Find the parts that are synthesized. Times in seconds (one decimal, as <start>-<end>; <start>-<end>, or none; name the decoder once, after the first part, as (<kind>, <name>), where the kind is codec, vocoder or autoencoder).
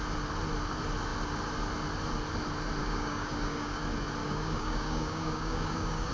2.8-3.8 (codec, DAC); 4.2-6.1